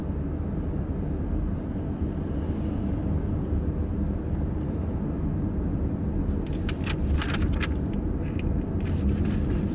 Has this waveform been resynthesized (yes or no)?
no